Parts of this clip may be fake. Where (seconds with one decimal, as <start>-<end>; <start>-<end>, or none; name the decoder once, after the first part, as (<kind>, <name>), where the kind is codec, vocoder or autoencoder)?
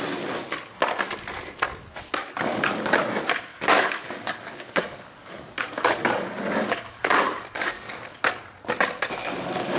2.2-3.0 (codec, DAC); 3.5-8.3